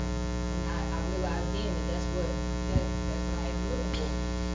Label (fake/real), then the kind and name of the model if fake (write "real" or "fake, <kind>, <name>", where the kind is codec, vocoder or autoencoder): real